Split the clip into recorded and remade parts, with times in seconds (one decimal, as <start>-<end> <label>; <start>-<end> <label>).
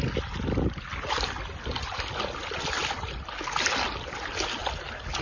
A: 0.0-5.2 recorded